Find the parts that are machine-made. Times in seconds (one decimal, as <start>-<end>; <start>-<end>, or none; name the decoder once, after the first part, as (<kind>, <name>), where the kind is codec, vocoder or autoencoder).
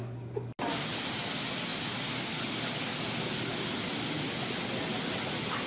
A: none